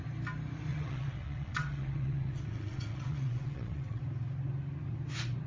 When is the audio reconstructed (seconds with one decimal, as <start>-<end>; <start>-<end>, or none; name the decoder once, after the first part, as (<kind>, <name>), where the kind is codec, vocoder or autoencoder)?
0.7-4.0 (vocoder, WaveNeXt)